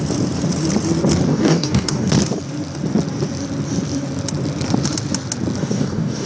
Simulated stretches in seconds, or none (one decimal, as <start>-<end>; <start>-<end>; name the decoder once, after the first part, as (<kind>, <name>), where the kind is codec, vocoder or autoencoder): 1.3-2.1 (codec, DAC); 5.6-6.3